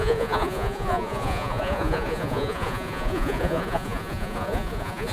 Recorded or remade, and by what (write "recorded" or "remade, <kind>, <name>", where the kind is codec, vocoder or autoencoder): remade, vocoder, Vocos